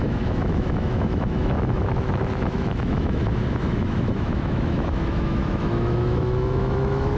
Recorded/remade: remade